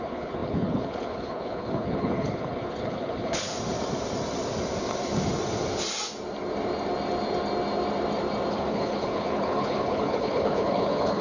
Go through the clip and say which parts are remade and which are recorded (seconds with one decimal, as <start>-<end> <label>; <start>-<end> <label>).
0.0-3.5 remade; 3.5-8.5 recorded; 8.5-11.2 remade